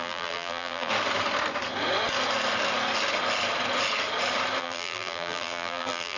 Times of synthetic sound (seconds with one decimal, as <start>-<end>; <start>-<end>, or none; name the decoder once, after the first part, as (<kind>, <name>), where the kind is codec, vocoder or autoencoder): 0.0-0.9 (vocoder, BigVGAN v2); 4.6-6.2